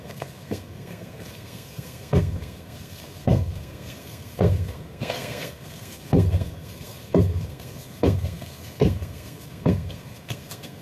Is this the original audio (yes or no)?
no